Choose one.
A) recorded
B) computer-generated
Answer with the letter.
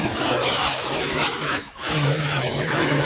B